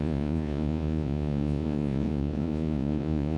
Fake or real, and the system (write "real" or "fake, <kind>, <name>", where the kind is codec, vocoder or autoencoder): fake, vocoder, Vocos